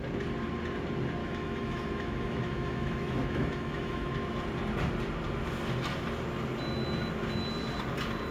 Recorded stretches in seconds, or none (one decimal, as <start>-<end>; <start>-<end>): 0.0-1.2; 4.1-8.3